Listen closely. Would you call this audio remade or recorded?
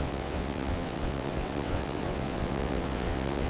remade